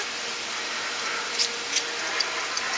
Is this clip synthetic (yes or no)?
no